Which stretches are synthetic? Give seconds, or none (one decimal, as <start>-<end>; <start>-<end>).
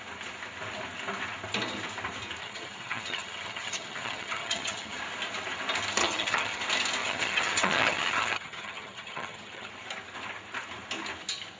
2.4-5.0; 6.0-6.6; 7.0-9.7